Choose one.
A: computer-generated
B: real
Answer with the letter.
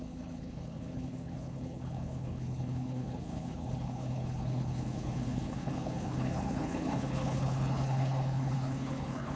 A